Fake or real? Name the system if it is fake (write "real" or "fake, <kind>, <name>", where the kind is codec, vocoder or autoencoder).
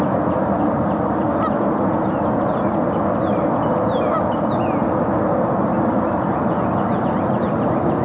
real